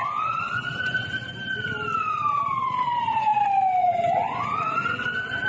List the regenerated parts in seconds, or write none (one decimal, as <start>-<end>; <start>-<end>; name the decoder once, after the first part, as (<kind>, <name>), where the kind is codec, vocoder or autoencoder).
0.0-1.3 (vocoder, Vocos); 2.6-3.3; 3.8-5.5